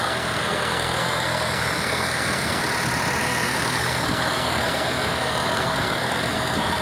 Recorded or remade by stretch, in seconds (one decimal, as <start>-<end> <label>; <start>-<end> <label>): 0.0-2.6 remade; 2.6-3.2 recorded; 3.2-6.8 remade